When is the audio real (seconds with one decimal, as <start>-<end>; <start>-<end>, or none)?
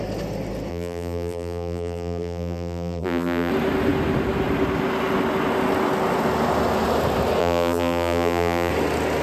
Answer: 0.0-0.7; 3.5-7.4; 8.7-9.2